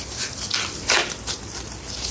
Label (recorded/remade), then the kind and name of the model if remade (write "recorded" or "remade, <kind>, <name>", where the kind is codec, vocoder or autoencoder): recorded